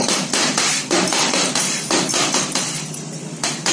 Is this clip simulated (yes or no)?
yes